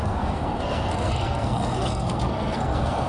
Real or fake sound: fake